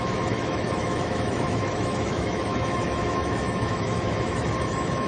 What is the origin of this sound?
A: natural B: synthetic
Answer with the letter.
B